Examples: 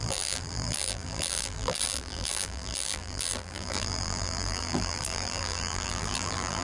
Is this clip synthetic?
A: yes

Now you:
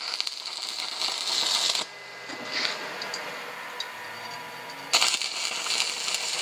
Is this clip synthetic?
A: no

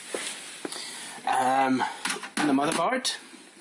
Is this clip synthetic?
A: no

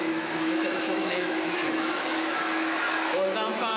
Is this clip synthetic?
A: yes